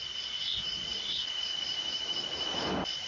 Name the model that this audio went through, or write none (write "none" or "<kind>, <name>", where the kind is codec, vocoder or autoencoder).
none